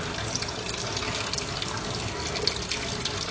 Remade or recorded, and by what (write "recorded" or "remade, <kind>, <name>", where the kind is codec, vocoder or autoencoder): recorded